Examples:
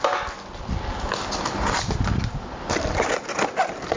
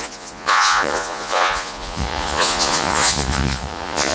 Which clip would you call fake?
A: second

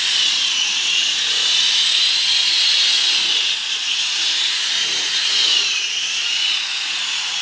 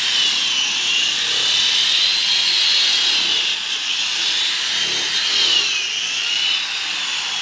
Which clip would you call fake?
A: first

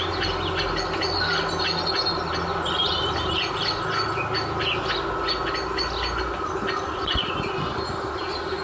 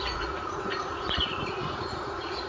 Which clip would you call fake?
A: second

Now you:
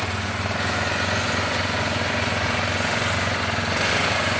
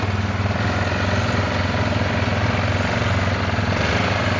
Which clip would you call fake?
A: first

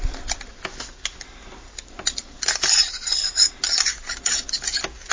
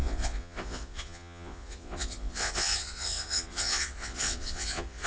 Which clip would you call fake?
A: second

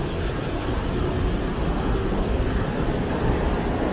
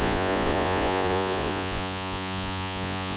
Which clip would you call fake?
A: second